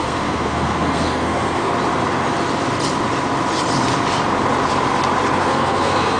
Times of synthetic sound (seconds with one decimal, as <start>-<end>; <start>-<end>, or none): 0.0-1.7; 5.4-6.2